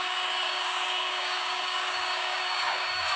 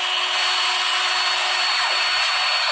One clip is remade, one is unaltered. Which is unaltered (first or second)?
second